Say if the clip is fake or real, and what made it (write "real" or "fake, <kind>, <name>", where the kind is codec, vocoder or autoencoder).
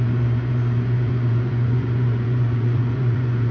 fake, vocoder, Vocos